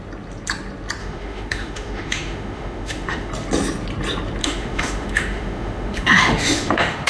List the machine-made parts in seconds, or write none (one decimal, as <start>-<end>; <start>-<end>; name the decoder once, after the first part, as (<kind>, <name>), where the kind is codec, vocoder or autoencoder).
1.0-3.3 (autoencoder, DAC-VAE); 4.4-7.1